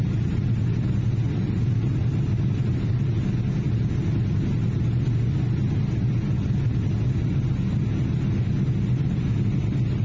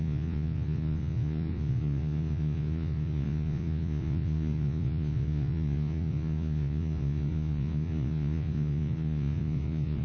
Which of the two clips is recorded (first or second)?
first